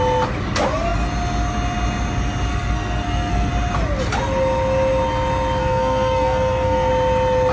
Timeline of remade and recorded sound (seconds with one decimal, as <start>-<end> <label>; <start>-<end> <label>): 0.0-2.5 recorded; 2.5-3.5 remade; 3.5-5.6 recorded; 5.6-6.9 remade; 6.9-7.5 recorded